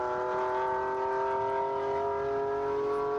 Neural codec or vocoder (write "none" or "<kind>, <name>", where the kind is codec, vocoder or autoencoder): none